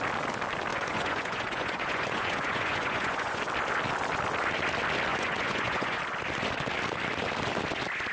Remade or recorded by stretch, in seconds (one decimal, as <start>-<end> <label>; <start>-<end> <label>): 0.0-0.7 recorded; 0.7-3.4 remade; 3.4-5.1 recorded; 5.1-6.0 remade; 6.0-8.1 recorded